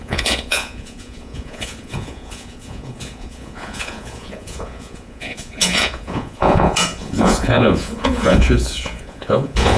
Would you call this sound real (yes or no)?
no